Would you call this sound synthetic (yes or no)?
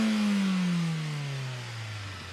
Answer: no